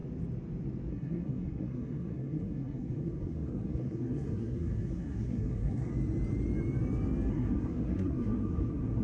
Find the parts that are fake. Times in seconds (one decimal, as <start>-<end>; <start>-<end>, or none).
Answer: 0.9-5.9; 7.3-9.0